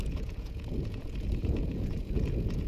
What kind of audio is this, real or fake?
fake